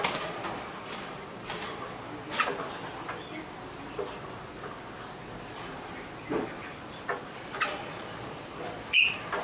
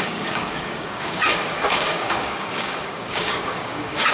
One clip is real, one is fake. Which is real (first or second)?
first